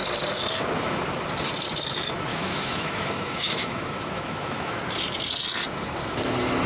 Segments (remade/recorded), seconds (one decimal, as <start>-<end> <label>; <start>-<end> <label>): 0.0-2.3 recorded; 2.3-4.8 remade; 4.8-6.7 recorded